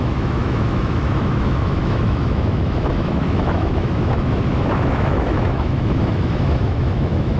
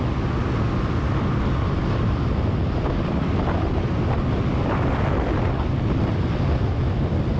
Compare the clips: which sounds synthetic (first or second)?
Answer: first